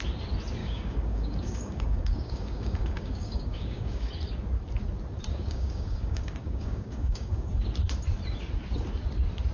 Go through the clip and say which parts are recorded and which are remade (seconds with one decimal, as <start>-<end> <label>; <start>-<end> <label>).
0.0-0.6 recorded; 0.6-4.1 remade; 4.1-5.3 recorded; 5.3-7.5 remade; 7.5-9.5 recorded